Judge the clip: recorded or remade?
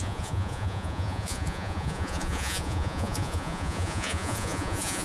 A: remade